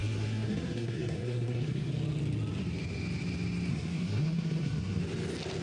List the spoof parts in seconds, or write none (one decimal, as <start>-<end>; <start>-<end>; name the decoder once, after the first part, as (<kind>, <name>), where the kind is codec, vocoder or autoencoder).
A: 0.0-1.9 (codec, SNAC); 3.7-5.0